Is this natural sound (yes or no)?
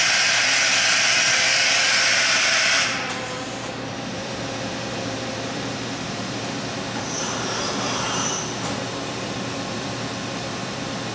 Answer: no